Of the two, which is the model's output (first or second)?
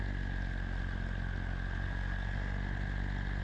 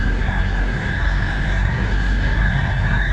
second